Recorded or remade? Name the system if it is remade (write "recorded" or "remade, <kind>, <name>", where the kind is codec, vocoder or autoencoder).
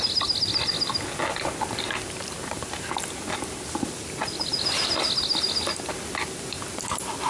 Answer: recorded